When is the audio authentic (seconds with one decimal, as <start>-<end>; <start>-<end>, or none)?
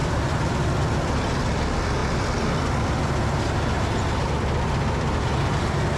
1.1-6.0